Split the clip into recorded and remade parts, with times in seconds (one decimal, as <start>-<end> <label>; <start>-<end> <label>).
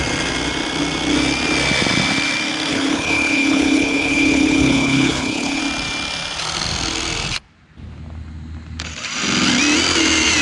0.0-2.7 recorded; 2.7-5.6 remade; 5.6-10.4 recorded